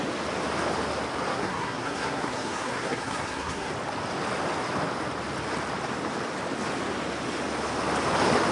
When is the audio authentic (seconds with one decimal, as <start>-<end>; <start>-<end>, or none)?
0.0-1.3; 3.7-8.5